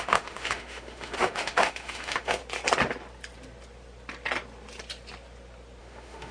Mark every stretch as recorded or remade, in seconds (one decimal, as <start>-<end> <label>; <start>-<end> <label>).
0.0-2.4 remade; 2.4-5.8 recorded; 5.8-6.3 remade